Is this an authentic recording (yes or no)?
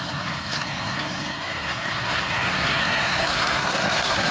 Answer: no